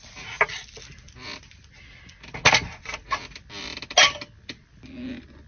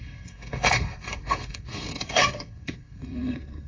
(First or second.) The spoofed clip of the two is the second